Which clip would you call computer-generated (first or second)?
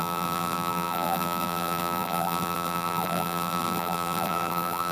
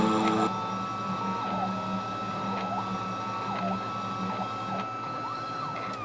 first